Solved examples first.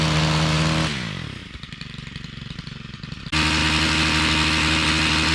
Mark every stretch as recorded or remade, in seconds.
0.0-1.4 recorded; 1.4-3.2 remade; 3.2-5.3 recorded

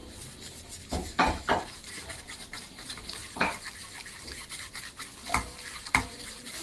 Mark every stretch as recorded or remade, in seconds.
0.0-3.2 remade; 3.2-6.6 recorded

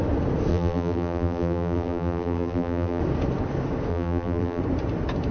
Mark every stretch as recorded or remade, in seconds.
0.0-0.5 recorded; 0.5-3.0 remade; 3.0-3.9 recorded; 3.9-4.6 remade; 4.6-5.3 recorded

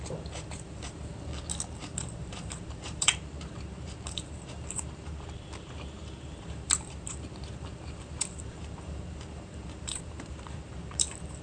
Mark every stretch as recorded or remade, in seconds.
0.0-1.1 remade; 1.1-1.8 recorded; 1.8-11.4 remade

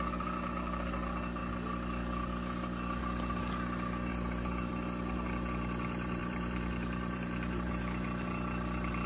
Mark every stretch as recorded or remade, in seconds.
0.0-4.1 recorded; 4.1-4.7 remade; 4.7-6.2 recorded; 6.2-7.7 remade; 7.7-9.1 recorded

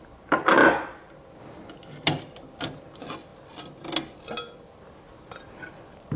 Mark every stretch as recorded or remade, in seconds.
0.0-0.6 recorded; 0.6-1.4 remade; 1.4-6.2 recorded